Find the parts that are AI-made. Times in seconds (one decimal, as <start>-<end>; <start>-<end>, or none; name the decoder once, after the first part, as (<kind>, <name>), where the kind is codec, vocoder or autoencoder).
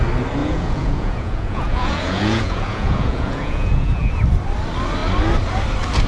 0.4-4.1 (vocoder, Vocos)